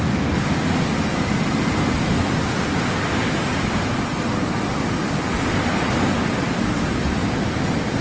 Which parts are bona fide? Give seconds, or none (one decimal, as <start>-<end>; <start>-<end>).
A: 0.0-8.0